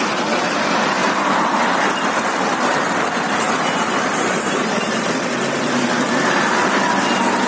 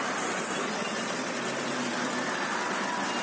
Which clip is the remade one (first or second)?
first